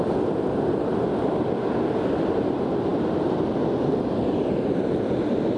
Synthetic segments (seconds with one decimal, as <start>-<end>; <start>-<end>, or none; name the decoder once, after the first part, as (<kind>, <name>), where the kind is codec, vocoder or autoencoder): 0.0-5.6 (vocoder, BigVGAN v2)